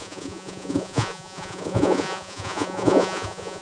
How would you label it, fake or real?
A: fake